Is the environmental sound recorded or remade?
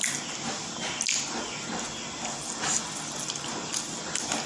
recorded